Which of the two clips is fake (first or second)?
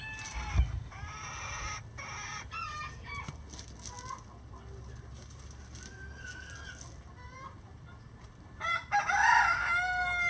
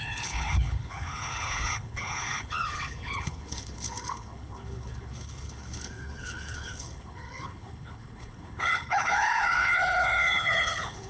second